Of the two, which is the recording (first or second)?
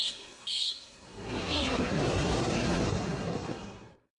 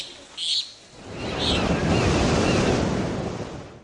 second